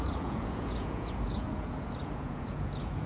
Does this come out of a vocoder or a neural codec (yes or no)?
yes